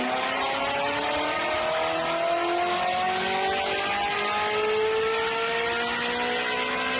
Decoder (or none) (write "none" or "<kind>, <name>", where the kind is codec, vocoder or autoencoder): none